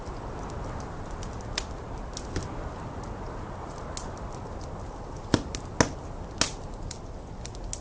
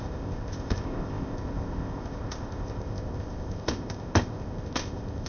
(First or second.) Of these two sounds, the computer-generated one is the second